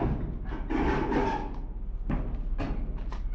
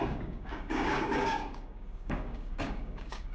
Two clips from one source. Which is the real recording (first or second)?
first